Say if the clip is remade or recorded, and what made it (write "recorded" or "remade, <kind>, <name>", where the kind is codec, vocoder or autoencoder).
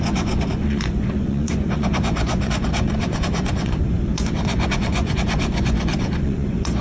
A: remade, vocoder, Vocos